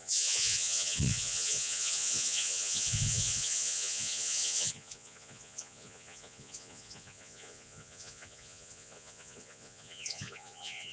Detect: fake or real fake